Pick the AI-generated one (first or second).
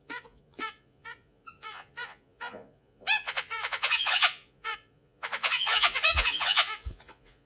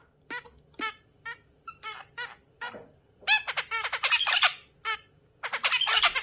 first